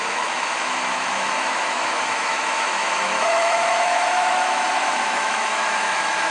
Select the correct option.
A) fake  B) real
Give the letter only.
A